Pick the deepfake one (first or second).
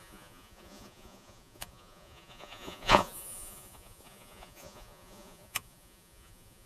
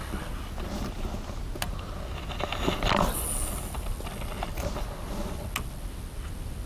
first